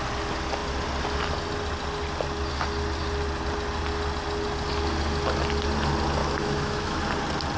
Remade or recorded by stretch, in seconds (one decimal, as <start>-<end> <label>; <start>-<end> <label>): 0.0-6.2 recorded; 6.2-7.0 remade; 7.0-7.6 recorded